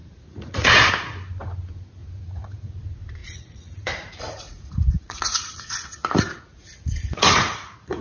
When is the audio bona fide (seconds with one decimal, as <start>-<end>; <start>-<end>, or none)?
0.9-2.0; 2.7-3.2